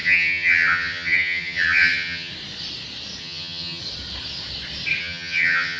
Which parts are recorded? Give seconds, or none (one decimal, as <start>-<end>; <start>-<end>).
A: 2.3-3.2; 3.8-5.0